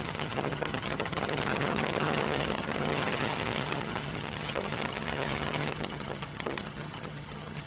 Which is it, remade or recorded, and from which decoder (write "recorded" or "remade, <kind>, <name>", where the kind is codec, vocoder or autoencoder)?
remade, vocoder, HiFi-GAN